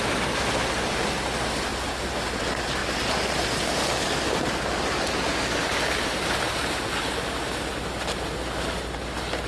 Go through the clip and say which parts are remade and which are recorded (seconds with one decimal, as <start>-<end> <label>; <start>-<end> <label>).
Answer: 0.0-1.7 recorded; 1.7-2.4 remade; 2.4-9.5 recorded